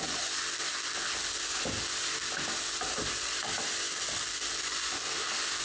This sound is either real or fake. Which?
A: real